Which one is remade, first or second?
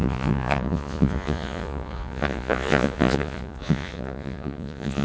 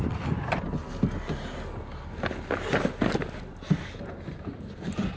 first